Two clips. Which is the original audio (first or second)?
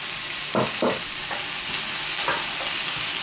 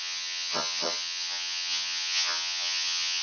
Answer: first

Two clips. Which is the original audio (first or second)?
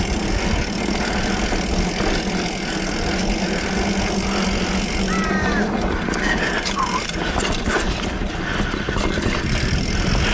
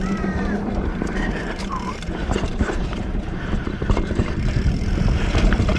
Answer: first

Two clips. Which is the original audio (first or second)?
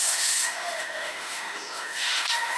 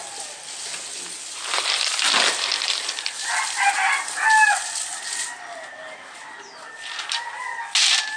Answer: second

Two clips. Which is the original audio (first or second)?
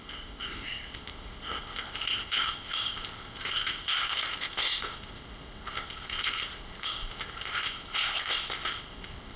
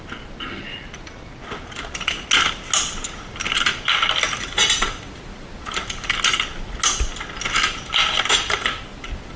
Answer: second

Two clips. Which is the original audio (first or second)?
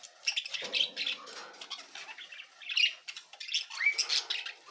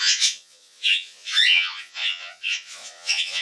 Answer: first